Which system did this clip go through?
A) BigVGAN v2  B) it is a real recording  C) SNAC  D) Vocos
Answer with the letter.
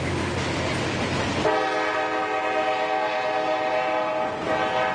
B